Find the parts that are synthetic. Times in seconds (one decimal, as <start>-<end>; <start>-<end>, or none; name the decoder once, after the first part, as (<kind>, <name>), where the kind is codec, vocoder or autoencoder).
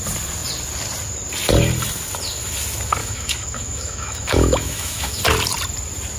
3.0-5.2 (autoencoder, DAC-VAE)